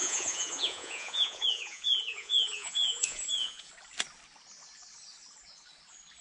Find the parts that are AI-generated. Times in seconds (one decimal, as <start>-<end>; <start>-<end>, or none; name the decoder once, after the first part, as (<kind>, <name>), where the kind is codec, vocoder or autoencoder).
0.0-3.7 (vocoder, Vocos)